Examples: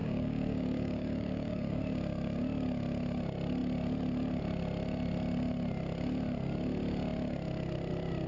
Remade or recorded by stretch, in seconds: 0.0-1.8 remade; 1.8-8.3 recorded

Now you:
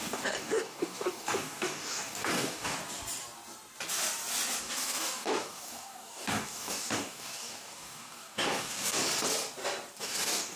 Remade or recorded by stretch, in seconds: 0.0-2.8 remade; 2.8-4.6 recorded; 4.6-9.0 remade; 9.0-10.0 recorded; 10.0-10.6 remade

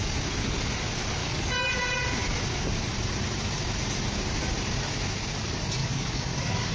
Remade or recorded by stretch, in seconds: 0.0-1.2 recorded; 1.2-1.7 remade; 1.7-5.8 recorded; 5.8-6.7 remade